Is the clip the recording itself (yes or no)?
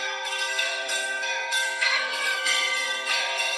no